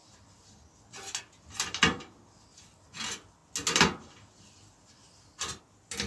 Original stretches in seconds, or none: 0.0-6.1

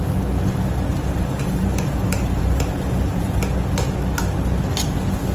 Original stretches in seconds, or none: 0.0-0.9; 3.4-5.3

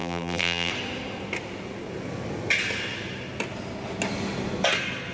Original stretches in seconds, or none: 0.7-5.1

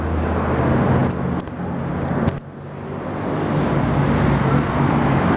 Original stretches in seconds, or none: 0.0-5.4